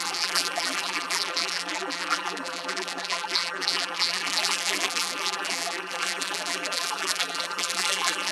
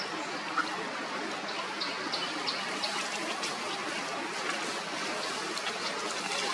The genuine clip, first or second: second